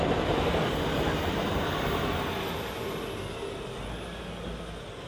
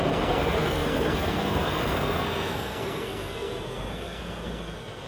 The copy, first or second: second